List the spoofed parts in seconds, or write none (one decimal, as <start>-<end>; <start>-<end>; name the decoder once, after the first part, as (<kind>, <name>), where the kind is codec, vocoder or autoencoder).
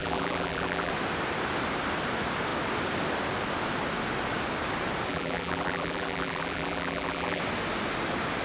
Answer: 0.0-0.9 (vocoder, BigVGAN v2); 5.1-7.4